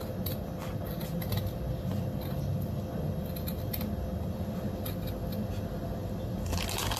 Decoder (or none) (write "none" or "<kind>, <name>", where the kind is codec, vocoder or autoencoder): none